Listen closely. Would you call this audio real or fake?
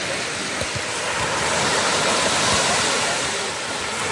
real